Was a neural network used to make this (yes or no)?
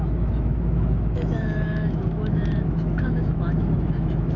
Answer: yes